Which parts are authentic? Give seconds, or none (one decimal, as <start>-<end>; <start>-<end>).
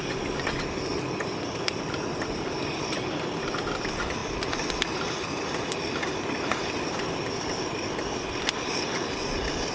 0.0-0.9; 3.0-4.2; 8.6-9.7